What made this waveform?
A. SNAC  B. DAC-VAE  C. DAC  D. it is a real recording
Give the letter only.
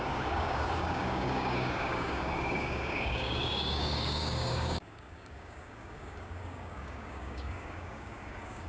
C